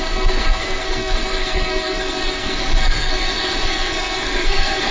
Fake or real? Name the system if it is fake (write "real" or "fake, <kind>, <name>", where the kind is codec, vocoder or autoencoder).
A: fake, codec, SNAC